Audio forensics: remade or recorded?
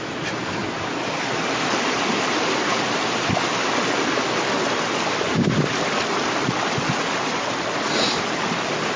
recorded